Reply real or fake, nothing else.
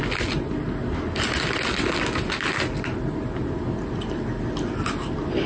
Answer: real